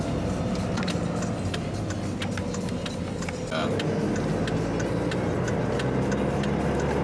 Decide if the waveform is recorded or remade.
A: recorded